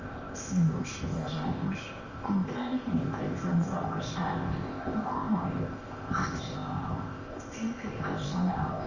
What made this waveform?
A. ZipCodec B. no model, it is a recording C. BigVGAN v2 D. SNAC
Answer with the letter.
A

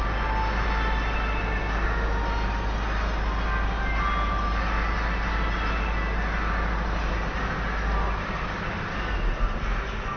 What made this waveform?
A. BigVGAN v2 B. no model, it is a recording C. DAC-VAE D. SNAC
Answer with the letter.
B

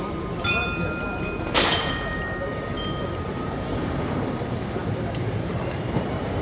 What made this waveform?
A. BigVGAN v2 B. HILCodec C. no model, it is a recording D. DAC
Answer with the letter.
A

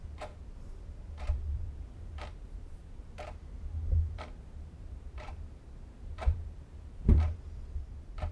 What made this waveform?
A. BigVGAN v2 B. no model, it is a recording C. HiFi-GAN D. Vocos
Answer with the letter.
A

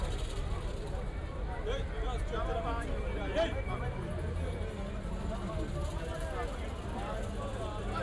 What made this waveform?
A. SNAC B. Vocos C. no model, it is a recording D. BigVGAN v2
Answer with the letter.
C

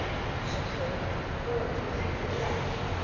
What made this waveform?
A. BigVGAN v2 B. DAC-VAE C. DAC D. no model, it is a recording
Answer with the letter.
D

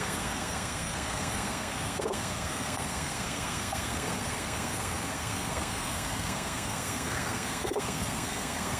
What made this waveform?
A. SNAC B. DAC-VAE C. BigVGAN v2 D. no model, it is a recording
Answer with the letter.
A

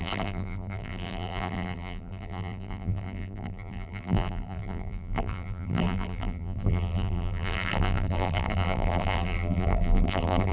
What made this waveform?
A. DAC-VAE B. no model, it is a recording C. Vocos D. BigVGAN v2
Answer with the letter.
D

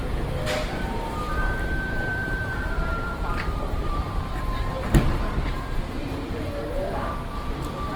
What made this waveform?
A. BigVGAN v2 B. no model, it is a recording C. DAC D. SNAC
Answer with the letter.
A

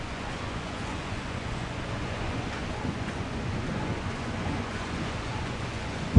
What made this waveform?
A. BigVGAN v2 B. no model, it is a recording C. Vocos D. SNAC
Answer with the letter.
C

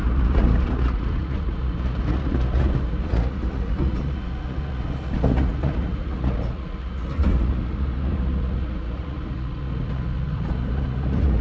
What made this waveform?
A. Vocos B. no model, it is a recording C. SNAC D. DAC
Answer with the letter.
A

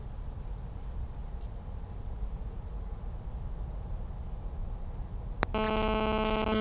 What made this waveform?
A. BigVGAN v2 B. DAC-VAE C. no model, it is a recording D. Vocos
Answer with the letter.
C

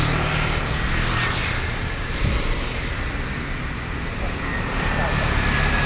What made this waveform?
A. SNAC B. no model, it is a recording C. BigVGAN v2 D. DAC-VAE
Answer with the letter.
B